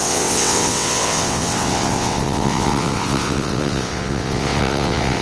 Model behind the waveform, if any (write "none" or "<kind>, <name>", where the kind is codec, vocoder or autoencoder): vocoder, WaveNeXt